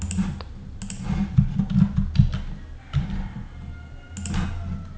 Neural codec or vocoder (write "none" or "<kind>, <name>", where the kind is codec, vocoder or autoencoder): none